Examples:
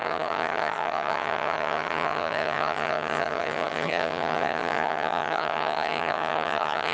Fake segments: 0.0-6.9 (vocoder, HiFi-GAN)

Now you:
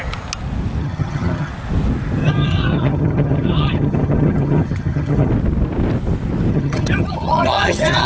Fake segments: 0.8-1.5 (vocoder, HiFi-GAN); 2.2-5.3; 6.5-8.1